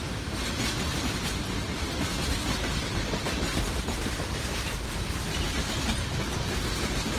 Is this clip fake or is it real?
real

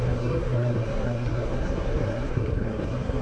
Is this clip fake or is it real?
fake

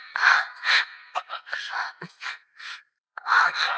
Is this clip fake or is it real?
fake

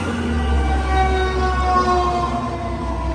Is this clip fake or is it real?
real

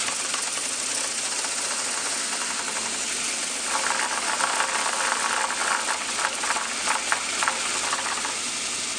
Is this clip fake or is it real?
real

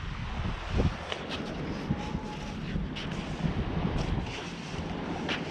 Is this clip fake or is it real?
real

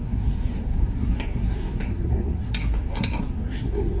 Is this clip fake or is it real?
fake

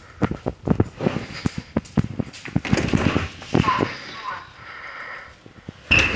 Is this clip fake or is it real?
real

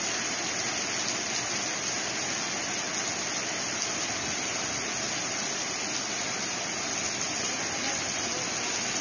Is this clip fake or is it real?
real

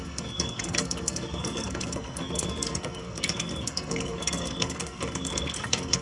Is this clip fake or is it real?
fake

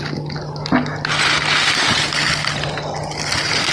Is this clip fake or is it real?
real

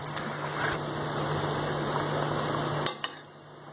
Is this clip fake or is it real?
real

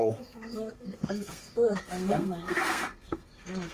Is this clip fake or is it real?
fake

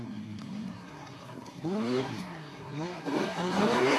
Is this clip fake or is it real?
fake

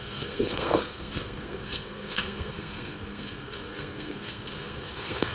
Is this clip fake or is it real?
fake